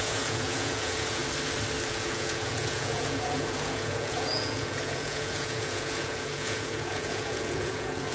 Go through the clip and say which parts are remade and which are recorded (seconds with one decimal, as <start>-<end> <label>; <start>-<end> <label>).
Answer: 0.0-1.2 remade; 1.2-1.9 recorded; 1.9-8.1 remade